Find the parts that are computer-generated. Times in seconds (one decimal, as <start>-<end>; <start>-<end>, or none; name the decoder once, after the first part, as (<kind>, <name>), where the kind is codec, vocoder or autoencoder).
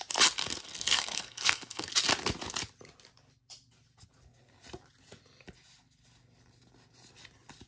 0.4-1.9 (codec, SNAC)